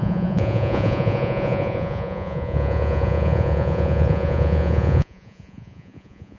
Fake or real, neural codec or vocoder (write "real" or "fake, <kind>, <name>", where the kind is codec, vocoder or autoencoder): fake, vocoder, Vocos